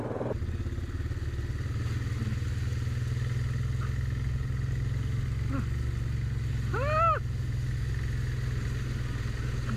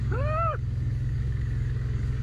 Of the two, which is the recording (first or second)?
first